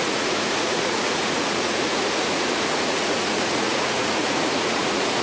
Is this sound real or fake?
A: fake